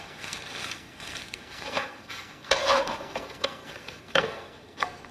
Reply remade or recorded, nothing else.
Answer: remade